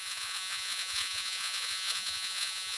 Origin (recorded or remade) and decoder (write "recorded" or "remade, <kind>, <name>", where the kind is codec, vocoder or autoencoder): remade, vocoder, Vocos